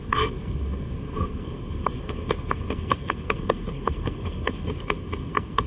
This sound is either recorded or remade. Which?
remade